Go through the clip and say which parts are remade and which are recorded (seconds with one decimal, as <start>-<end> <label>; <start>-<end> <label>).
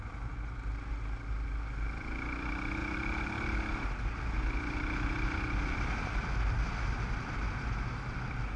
0.0-2.8 recorded; 2.8-4.4 remade; 4.4-8.6 recorded